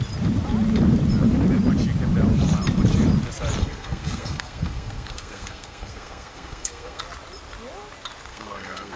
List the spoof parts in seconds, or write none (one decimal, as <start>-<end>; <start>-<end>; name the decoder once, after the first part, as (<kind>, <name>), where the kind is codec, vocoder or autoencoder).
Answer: 3.6-7.0 (codec, SNAC); 8.3-9.0